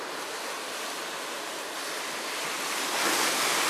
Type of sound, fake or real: fake